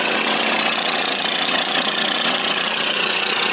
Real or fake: fake